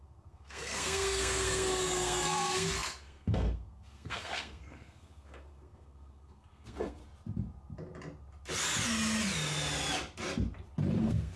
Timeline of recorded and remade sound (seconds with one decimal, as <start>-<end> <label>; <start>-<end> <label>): 0.0-7.0 remade; 7.0-11.0 recorded; 11.0-11.4 remade